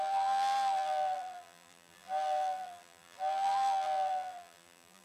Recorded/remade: remade